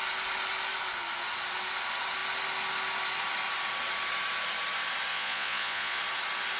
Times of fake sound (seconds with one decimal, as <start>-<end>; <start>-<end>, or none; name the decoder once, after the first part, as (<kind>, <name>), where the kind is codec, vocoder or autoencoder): 5.1-6.0 (vocoder, Vocos)